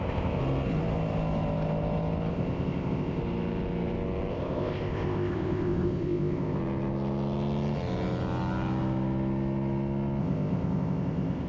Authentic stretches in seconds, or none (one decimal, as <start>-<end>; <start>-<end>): 0.4-2.3; 3.2-4.3; 6.6-10.2